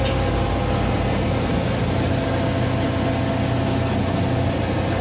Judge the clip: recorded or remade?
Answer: recorded